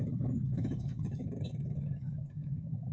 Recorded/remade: remade